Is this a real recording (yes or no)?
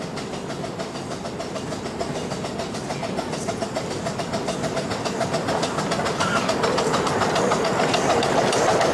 yes